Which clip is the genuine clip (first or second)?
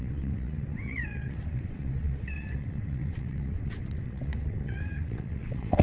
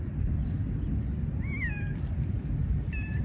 second